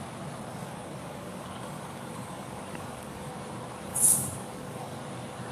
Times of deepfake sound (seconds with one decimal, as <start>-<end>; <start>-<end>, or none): 0.5-3.3; 3.9-5.0